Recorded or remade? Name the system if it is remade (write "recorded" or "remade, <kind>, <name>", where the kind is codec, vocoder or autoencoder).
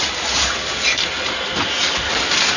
recorded